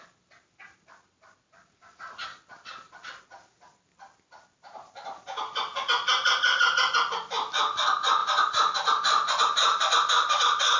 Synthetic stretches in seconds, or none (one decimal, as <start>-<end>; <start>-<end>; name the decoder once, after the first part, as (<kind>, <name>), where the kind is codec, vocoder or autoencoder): none